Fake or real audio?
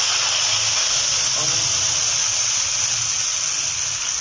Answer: real